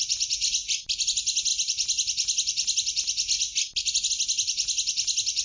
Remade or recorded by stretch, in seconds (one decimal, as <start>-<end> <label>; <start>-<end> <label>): 0.0-5.4 recorded